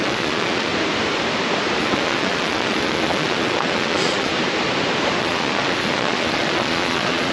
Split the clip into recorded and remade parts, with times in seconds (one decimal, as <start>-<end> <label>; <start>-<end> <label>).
0.0-0.7 remade; 0.7-1.8 recorded; 1.8-4.3 remade; 4.3-5.2 recorded; 5.2-7.3 remade